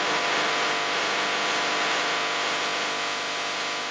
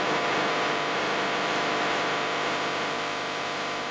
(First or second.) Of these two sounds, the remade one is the second